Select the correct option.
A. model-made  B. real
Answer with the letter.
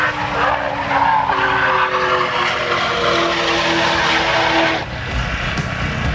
B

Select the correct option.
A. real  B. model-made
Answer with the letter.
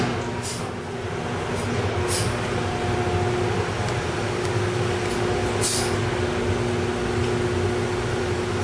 A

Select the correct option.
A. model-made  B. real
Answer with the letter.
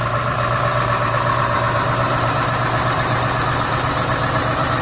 A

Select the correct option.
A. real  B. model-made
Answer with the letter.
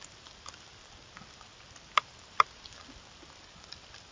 A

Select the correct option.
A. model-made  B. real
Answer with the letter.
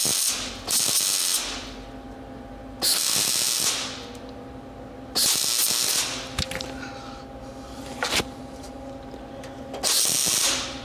B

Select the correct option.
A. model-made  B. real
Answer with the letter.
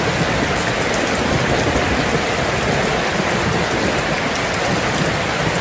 B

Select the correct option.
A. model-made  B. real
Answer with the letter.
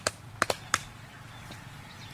A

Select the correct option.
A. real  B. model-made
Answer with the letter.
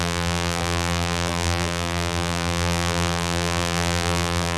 B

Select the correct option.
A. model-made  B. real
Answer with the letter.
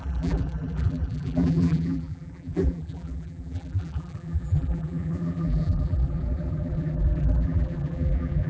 A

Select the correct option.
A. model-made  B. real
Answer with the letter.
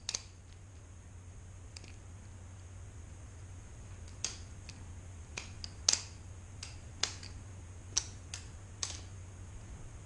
B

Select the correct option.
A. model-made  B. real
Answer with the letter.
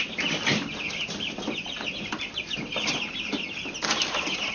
B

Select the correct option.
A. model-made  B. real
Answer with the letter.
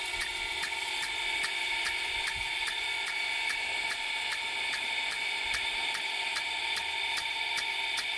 A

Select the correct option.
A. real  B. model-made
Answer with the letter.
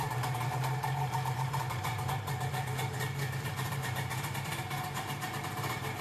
B